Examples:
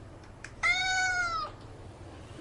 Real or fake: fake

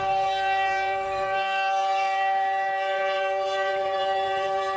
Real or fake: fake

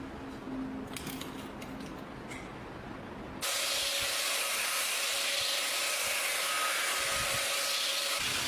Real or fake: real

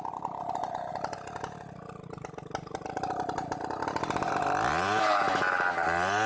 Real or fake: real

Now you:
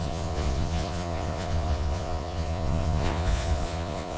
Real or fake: fake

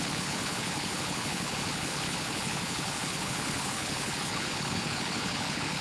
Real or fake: fake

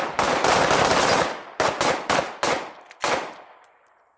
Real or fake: real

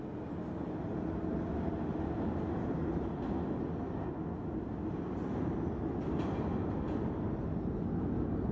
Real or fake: real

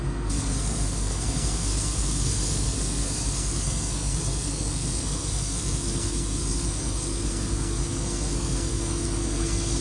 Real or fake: fake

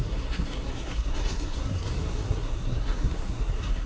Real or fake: fake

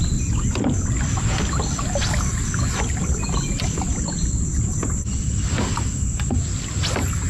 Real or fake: real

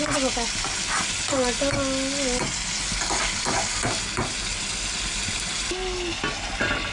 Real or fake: real